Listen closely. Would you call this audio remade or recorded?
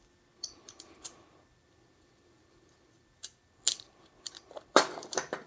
remade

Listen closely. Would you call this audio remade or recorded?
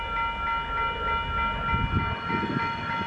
recorded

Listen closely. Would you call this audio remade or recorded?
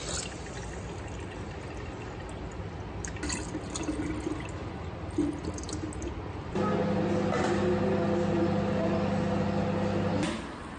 recorded